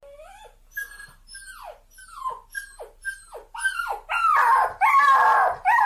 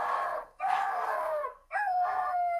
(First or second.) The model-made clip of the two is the second